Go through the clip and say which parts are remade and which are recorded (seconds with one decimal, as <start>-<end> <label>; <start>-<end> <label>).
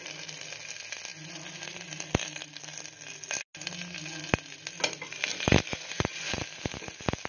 0.0-5.7 recorded; 5.7-6.3 remade; 6.3-7.3 recorded